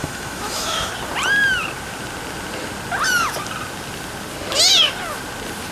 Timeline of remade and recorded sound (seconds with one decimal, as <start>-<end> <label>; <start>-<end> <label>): 0.0-0.9 remade; 0.9-5.7 recorded